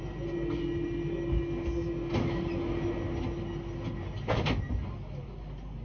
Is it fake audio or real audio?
real